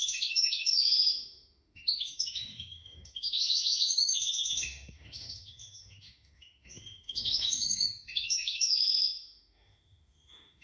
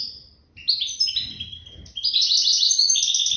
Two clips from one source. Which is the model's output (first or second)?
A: first